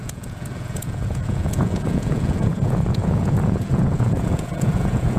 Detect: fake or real fake